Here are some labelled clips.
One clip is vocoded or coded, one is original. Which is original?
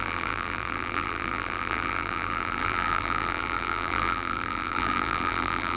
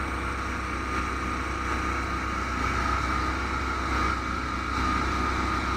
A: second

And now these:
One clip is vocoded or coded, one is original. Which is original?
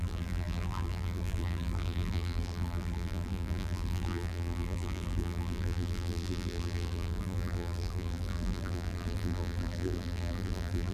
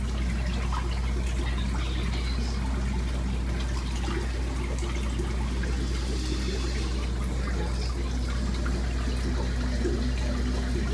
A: second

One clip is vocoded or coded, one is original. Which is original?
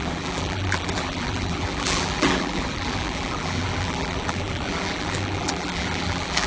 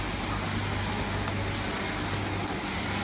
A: second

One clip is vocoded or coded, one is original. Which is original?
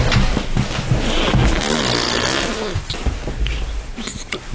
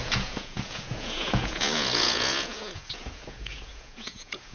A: first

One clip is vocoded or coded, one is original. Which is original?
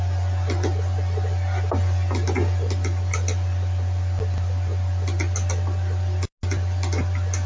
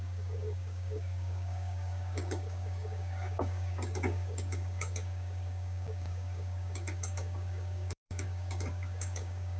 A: first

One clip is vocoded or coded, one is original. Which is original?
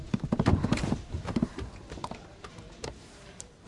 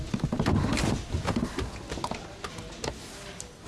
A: second